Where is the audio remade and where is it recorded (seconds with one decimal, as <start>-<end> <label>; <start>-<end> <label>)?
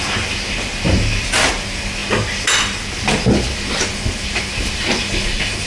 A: 0.0-5.7 recorded